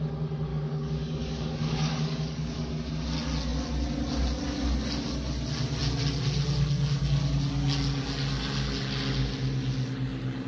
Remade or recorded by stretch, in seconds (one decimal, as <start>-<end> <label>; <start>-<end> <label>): 0.0-0.5 recorded; 0.5-2.7 remade; 2.7-10.5 recorded